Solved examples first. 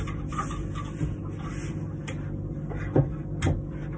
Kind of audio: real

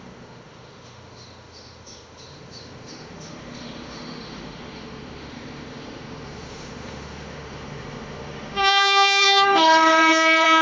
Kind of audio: fake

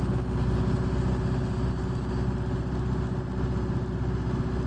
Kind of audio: real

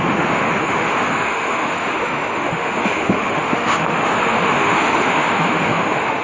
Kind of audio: fake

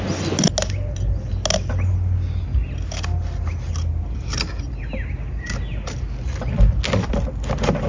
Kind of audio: real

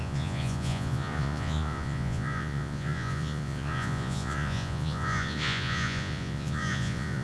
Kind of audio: fake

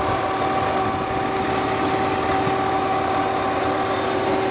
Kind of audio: real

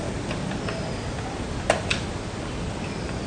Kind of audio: real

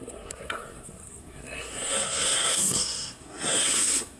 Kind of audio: fake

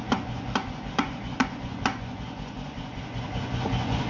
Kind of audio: fake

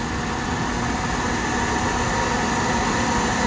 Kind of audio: real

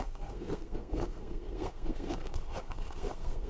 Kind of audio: fake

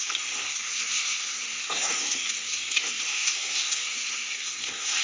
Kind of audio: fake